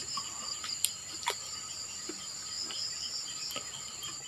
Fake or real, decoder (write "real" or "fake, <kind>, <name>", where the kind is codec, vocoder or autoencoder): real